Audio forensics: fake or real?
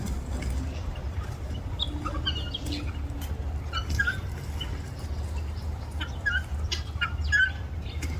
real